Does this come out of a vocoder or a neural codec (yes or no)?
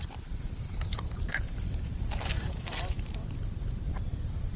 yes